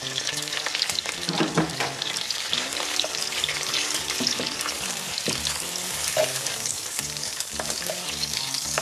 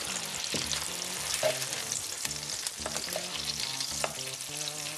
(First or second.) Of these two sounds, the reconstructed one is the first